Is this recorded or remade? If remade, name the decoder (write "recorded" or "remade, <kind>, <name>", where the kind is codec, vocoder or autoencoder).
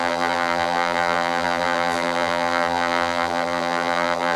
remade, vocoder, BigVGAN v2